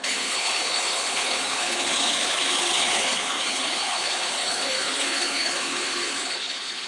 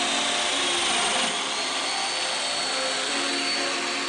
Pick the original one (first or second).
second